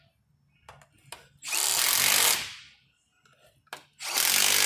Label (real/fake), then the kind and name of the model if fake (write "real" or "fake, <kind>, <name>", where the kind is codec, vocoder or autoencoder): real